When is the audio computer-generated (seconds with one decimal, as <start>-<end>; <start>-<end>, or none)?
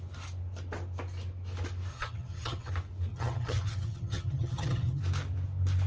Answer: 1.9-2.7; 3.1-5.0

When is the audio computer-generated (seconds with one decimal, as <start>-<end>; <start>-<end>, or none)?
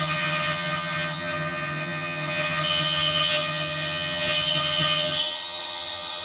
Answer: 0.0-6.2